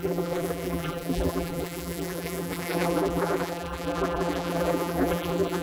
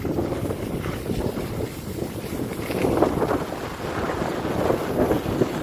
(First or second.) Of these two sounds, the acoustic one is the second